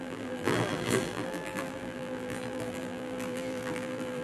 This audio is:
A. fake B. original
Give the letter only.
A